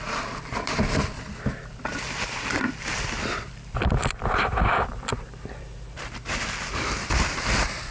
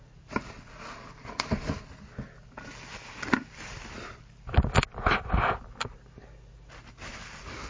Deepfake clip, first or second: first